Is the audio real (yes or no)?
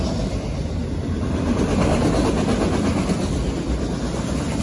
yes